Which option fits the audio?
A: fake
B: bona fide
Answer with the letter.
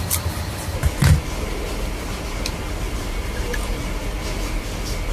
B